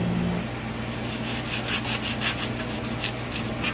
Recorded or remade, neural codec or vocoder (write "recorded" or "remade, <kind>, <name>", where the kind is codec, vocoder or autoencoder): recorded